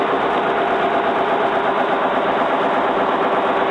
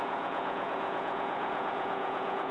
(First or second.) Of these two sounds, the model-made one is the second